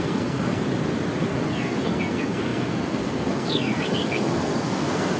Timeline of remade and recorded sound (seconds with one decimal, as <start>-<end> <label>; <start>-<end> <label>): 0.0-0.6 remade; 0.6-1.2 recorded; 1.2-5.2 remade